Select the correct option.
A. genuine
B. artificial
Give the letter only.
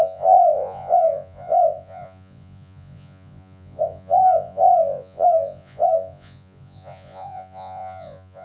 B